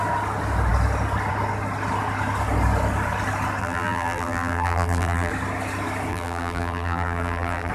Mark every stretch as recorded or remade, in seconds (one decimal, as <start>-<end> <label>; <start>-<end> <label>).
0.0-3.6 recorded; 3.6-5.3 remade; 5.3-6.1 recorded; 6.1-7.7 remade